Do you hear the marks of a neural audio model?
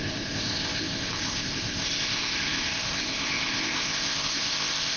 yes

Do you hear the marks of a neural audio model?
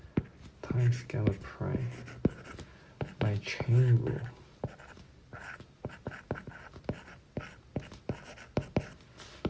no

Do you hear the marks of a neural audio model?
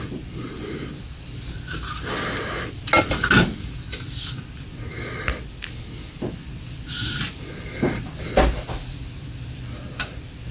no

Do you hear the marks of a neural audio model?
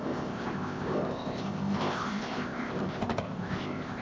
yes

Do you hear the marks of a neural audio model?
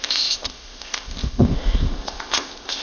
yes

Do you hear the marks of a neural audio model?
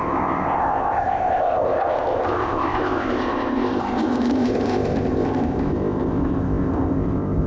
yes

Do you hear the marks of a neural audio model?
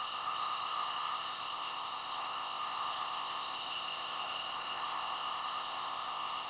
yes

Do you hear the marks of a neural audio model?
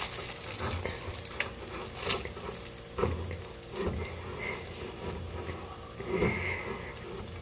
no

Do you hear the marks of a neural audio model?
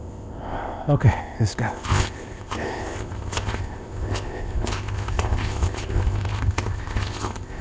yes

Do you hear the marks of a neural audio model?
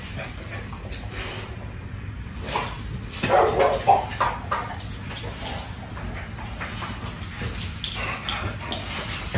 no